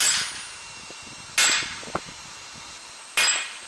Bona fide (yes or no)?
yes